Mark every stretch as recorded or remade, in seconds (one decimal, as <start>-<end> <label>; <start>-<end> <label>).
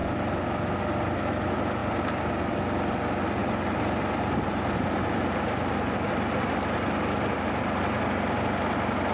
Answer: 0.0-1.8 recorded; 1.8-2.5 remade; 2.5-3.4 recorded; 3.4-8.0 remade; 8.0-9.1 recorded